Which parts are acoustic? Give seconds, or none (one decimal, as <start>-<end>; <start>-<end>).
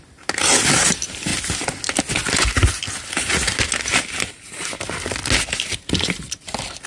0.0-6.9